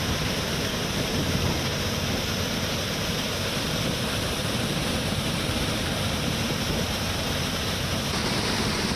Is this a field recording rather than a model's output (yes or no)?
no